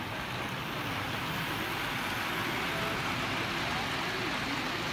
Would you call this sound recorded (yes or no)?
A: yes